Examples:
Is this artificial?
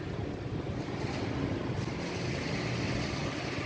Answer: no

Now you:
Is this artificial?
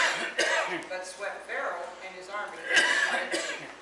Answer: no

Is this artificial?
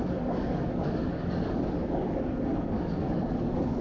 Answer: yes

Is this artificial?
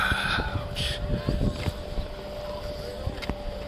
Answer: no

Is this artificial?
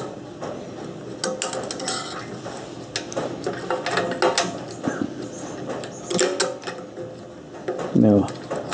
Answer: no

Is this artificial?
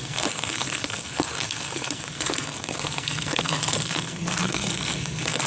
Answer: yes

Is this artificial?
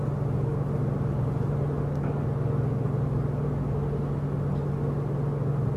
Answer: no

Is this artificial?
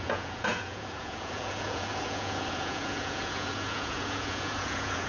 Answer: yes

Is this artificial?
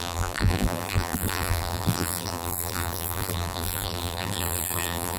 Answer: yes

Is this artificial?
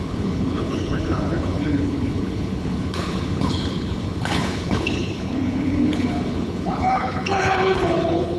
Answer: yes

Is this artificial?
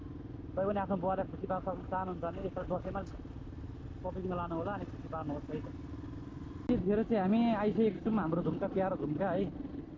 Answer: no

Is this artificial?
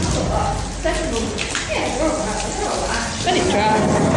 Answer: no